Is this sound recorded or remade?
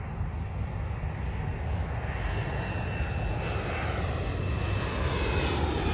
recorded